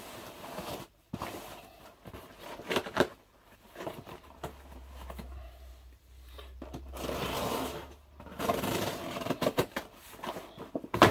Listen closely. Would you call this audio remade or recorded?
remade